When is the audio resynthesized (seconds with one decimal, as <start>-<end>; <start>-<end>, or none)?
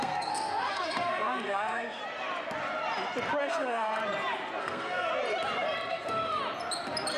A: 0.0-2.0; 3.4-4.0; 4.6-5.1; 5.9-6.4